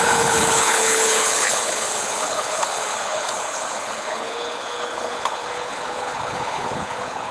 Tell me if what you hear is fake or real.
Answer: fake